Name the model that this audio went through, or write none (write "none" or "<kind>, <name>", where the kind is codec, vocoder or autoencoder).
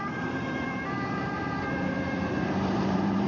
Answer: vocoder, BigVGAN v2